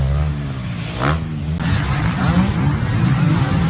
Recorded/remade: recorded